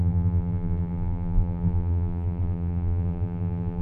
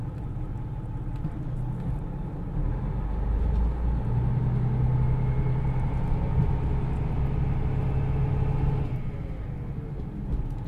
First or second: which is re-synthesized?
first